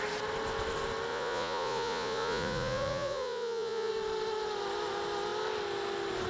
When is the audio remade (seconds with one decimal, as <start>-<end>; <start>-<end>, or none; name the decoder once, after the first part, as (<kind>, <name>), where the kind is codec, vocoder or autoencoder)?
1.1-3.9 (vocoder, Vocos)